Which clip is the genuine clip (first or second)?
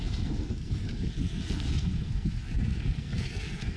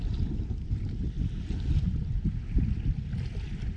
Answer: second